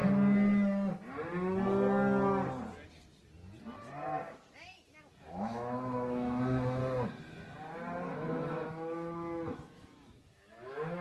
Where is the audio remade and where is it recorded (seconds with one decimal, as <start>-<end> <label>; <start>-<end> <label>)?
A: 0.0-5.2 recorded; 5.2-6.8 remade; 6.8-8.1 recorded; 8.1-11.0 remade